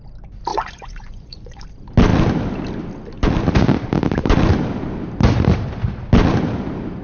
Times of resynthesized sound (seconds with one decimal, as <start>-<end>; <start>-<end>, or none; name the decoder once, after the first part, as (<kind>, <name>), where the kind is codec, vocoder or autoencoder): 0.5-1.6 (vocoder, Vocos)